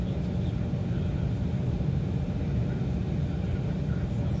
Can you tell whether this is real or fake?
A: real